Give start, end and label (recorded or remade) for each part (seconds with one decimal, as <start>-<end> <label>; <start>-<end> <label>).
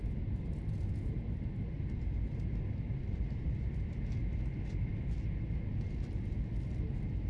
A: 0.0-7.3 recorded